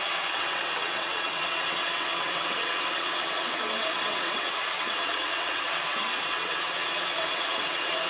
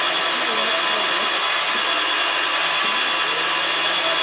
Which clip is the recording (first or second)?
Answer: second